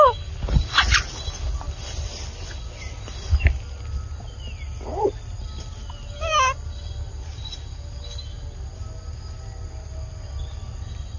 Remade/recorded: recorded